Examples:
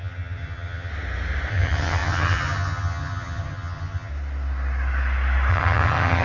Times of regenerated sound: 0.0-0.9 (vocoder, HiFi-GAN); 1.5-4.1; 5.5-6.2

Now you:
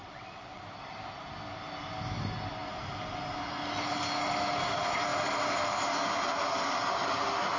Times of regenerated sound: 0.0-0.6 (vocoder, WaveNeXt)

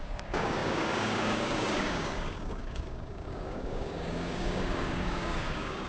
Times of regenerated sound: 0.0-5.9 (codec, DAC)

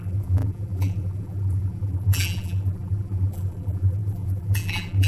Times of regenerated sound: 0.0-5.1 (vocoder, BigVGAN v2)

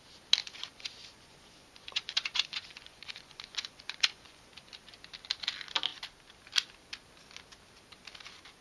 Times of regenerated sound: 0.4-4.5 (vocoder, Vocos)

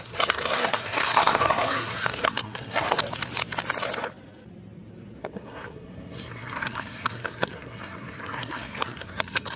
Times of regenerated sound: 0.0-3.0 (codec, SNAC); 5.2-9.6